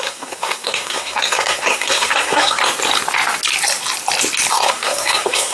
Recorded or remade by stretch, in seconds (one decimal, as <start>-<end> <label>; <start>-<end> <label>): 0.0-2.6 remade; 2.6-4.5 recorded; 4.5-5.5 remade